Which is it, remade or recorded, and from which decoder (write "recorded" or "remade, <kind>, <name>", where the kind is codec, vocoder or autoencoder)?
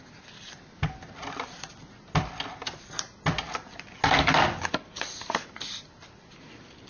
recorded